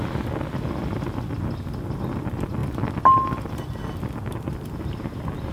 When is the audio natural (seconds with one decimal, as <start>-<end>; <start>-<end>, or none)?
0.0-5.5